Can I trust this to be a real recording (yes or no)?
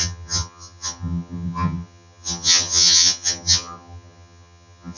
no